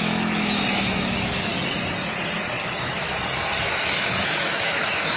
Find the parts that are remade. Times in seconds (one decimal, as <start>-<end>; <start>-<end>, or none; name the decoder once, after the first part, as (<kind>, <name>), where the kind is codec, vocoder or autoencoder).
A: 0.0-1.5 (autoencoder, DAC-VAE); 2.6-3.1; 3.6-5.2